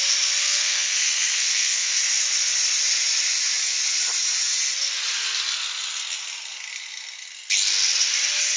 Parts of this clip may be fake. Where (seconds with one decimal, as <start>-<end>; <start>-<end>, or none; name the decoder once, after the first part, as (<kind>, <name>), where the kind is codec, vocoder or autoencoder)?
0.4-2.0 (codec, SNAC)